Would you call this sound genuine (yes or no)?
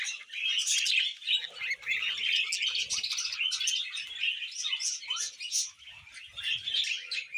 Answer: yes